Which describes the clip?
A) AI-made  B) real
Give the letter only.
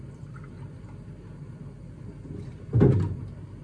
B